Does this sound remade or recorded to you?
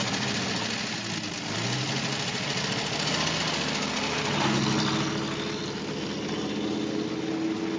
recorded